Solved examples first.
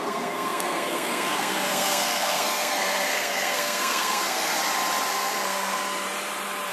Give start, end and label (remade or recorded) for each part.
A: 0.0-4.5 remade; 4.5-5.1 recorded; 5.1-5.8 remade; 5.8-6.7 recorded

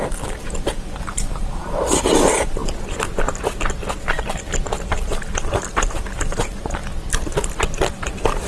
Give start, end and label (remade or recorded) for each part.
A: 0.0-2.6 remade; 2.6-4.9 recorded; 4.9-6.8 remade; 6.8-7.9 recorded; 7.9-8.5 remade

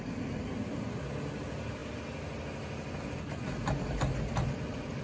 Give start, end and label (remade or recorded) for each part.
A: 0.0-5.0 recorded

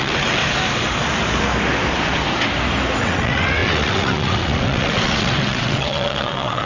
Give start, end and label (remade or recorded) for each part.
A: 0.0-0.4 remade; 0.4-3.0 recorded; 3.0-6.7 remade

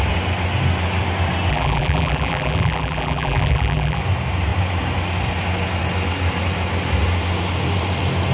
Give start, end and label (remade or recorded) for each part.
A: 0.0-1.5 recorded; 1.5-4.0 remade; 4.0-8.3 recorded

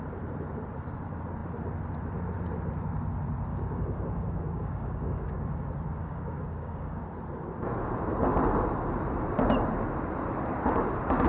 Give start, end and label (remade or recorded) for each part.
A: 0.0-3.5 recorded; 3.5-5.6 remade; 5.6-6.0 recorded; 6.0-7.0 remade; 7.0-11.3 recorded

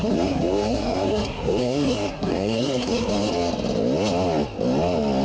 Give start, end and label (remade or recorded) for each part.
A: 0.0-3.1 remade; 3.1-5.2 recorded